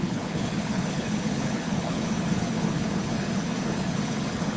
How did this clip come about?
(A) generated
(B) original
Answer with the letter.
A